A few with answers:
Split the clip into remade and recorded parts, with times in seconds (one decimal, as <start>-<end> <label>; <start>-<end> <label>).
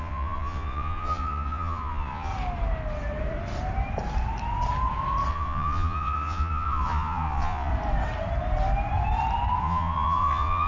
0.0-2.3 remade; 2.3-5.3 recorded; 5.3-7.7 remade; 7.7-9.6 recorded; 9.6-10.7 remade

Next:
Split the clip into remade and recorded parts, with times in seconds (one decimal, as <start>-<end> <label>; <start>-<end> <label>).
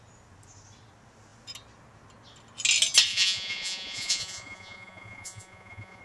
0.0-3.1 recorded; 3.1-6.0 remade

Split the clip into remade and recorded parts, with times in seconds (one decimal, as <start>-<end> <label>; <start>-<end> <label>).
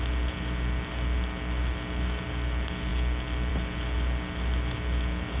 0.0-5.4 recorded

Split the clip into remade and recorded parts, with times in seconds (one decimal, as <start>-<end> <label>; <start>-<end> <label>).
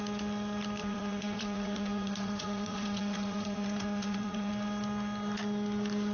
0.0-0.8 recorded; 0.8-4.5 remade; 4.5-6.1 recorded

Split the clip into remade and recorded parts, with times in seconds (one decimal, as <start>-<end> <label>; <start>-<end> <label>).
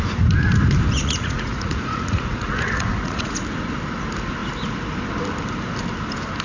0.0-1.0 recorded; 1.0-3.4 remade; 3.4-6.4 recorded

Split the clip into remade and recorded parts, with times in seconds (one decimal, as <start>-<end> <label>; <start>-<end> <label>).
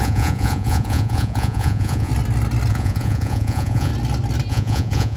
0.0-2.1 remade; 2.1-2.7 recorded; 2.7-3.9 remade; 3.9-4.5 recorded; 4.5-5.2 remade